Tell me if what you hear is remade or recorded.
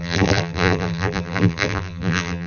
remade